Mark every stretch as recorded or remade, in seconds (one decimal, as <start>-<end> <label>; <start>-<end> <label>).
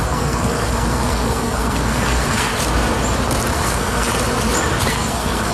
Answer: 0.0-2.5 remade; 2.5-3.5 recorded; 3.5-4.1 remade; 4.1-4.9 recorded; 4.9-5.5 remade